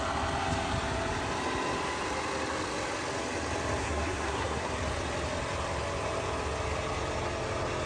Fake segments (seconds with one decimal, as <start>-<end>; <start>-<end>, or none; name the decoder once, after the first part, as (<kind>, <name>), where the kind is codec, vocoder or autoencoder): 3.8-4.7 (codec, SNAC)